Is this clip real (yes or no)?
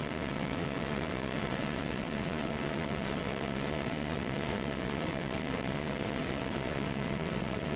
no